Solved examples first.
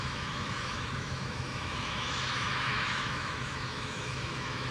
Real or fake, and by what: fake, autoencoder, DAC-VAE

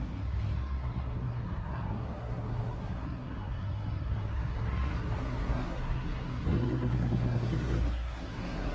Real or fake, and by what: fake, codec, SNAC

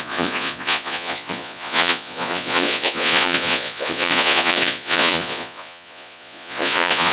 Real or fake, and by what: fake, vocoder, Vocos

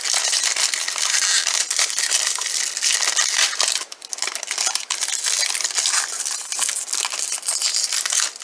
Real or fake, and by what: real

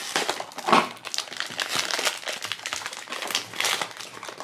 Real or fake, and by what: real